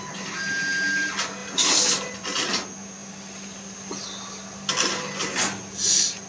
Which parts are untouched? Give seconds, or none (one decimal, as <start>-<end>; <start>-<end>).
0.0-1.4; 2.1-6.3